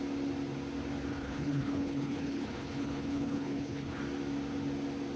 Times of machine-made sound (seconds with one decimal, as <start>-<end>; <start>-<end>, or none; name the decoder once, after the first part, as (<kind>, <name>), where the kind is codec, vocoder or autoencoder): 1.1-4.0 (codec, HILCodec)